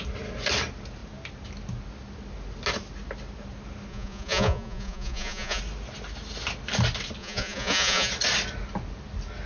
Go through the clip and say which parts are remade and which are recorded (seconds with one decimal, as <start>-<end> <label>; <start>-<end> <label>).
0.0-3.9 recorded; 3.9-5.6 remade; 5.6-7.2 recorded; 7.2-8.1 remade; 8.1-9.5 recorded